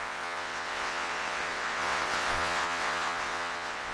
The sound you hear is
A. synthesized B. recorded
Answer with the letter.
A